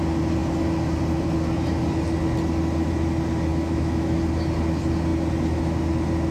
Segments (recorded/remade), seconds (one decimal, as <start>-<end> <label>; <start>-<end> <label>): 0.0-3.5 recorded; 3.5-4.2 remade; 4.2-6.3 recorded